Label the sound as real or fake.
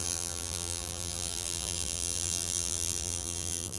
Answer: fake